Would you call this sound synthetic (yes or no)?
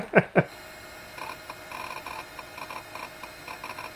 no